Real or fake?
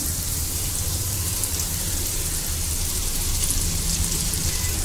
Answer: fake